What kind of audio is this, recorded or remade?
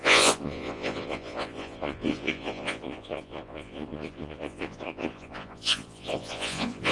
remade